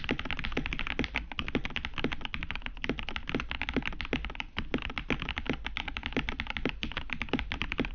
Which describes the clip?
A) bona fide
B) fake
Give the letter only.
A